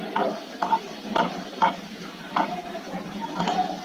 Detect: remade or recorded remade